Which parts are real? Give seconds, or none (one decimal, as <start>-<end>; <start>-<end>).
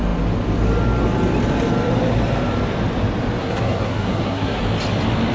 0.0-3.4; 4.6-5.3